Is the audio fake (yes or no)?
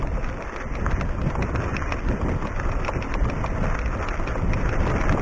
no